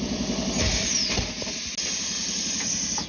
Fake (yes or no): no